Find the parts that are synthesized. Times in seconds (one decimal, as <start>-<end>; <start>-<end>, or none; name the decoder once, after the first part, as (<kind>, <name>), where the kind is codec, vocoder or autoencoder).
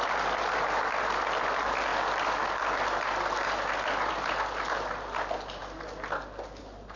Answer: none